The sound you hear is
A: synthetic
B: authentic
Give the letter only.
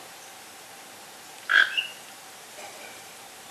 A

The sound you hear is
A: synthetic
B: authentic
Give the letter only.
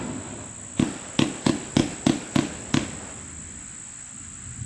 B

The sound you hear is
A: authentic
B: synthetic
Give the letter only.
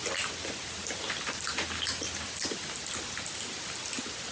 A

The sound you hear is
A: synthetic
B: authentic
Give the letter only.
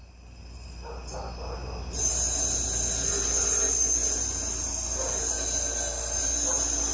B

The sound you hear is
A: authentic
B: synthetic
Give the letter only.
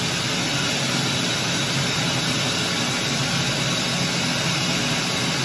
A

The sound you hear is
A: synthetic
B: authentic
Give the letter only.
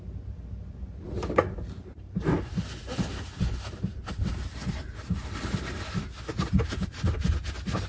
B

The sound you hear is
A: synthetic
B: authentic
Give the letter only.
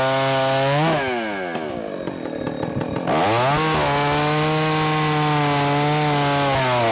B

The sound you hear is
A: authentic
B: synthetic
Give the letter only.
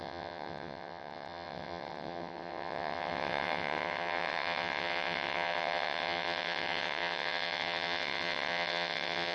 B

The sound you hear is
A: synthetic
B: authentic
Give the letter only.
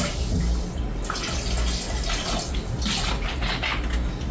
B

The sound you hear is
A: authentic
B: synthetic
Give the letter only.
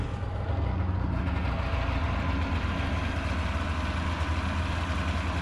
A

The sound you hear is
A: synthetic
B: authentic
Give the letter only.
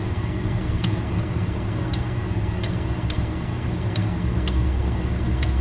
A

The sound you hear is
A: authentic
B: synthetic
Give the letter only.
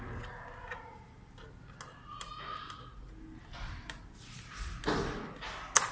A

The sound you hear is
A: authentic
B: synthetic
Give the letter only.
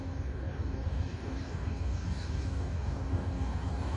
B